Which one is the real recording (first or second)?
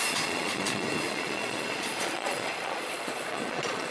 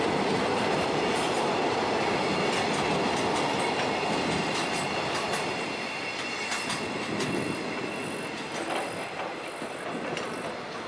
second